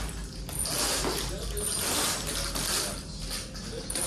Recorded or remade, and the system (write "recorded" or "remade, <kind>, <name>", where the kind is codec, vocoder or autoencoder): recorded